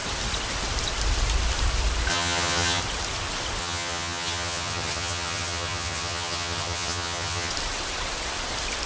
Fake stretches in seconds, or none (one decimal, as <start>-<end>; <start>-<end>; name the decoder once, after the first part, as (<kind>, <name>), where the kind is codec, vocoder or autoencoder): 2.1-2.8 (vocoder, HiFi-GAN); 3.6-7.5

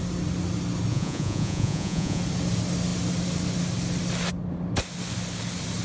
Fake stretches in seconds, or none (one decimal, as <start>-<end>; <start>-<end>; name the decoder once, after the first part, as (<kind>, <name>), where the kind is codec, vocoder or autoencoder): 0.9-2.2 (vocoder, Vocos)

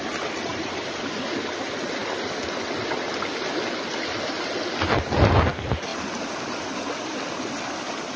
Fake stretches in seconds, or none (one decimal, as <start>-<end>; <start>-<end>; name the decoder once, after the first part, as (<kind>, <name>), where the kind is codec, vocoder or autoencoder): 0.5-1.0 (vocoder, BigVGAN v2); 5.9-6.9

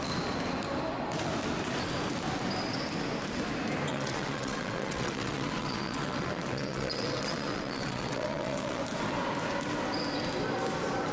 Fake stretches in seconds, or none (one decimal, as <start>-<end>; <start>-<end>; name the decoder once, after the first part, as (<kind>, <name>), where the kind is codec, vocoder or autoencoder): 3.9-8.8 (vocoder, WaveNeXt)

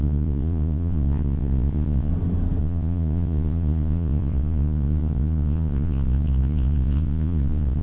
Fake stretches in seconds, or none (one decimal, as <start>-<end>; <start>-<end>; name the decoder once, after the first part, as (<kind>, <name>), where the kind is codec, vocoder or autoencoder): 0.0-2.1 (vocoder, Vocos); 2.6-7.8

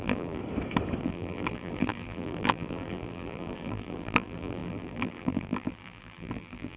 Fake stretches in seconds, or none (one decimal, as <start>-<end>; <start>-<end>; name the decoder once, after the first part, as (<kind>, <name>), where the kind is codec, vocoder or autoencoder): 0.0-0.4 (vocoder, BigVGAN v2); 1.0-6.8

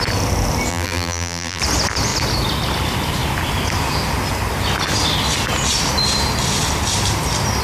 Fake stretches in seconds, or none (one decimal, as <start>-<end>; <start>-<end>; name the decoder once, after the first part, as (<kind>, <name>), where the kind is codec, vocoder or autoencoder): 0.7-1.6 (vocoder, BigVGAN v2)

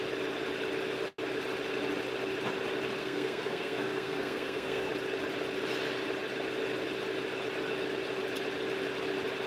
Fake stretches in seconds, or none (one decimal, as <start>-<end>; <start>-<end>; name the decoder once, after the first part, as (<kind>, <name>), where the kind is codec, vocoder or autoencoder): 3.0-4.9 (codec, SNAC)